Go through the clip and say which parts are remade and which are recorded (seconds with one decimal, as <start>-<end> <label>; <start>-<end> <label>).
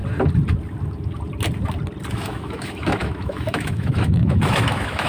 0.0-2.1 recorded; 2.1-5.1 remade